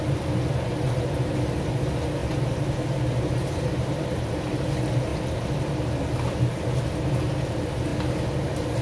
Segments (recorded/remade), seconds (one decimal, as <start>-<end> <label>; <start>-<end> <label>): 0.0-8.8 recorded